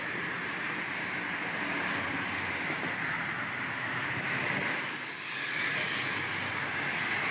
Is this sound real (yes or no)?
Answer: yes